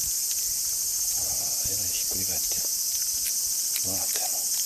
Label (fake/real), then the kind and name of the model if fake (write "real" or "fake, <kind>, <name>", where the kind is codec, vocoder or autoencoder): real